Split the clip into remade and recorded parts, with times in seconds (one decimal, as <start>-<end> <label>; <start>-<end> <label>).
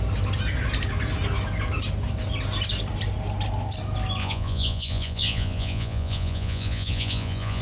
0.0-4.2 recorded; 4.2-7.6 remade